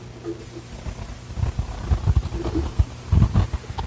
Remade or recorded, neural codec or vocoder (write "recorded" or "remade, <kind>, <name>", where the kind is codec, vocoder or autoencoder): recorded